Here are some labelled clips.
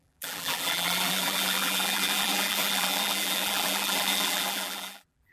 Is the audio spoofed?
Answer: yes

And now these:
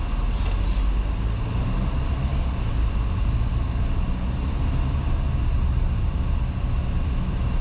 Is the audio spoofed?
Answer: no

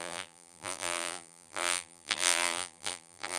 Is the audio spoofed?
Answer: yes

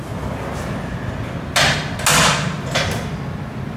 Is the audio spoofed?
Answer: no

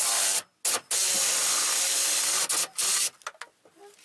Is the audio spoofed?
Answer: no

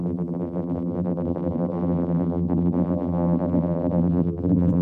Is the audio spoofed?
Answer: yes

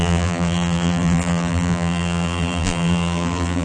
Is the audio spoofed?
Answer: yes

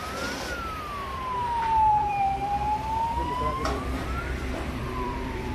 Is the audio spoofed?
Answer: yes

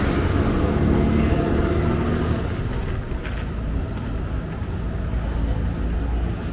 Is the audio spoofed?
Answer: no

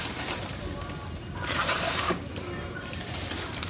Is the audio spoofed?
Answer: yes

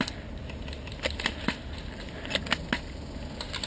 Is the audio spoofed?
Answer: no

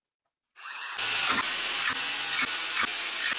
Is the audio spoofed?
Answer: no